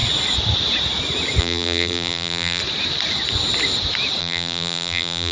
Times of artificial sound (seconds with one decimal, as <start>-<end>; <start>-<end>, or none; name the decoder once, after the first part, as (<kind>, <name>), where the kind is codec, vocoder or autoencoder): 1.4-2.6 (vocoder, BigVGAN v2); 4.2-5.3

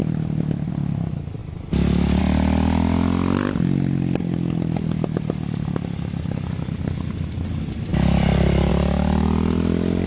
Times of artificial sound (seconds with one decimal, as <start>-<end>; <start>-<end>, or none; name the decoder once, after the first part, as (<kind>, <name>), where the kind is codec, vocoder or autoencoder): 1.4-2.2 (vocoder, BigVGAN v2)

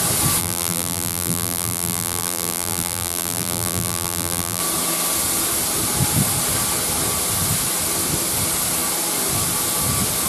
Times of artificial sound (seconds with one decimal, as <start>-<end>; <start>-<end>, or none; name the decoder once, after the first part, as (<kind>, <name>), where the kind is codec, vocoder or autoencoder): 0.4-4.6 (vocoder, BigVGAN v2)